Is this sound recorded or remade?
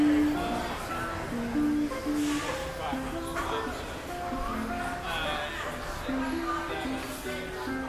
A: recorded